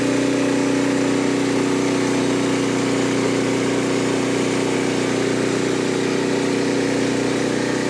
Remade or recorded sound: recorded